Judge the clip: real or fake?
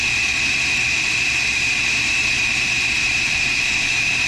real